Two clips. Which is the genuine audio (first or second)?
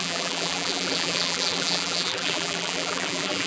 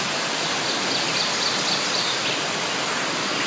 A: second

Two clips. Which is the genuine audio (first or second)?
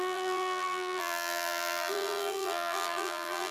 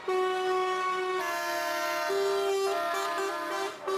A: second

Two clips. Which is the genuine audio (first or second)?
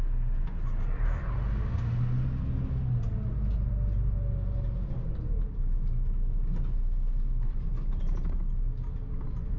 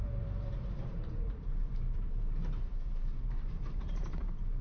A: first